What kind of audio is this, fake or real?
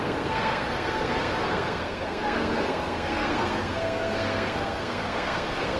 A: fake